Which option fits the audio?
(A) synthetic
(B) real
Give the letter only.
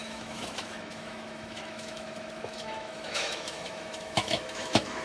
A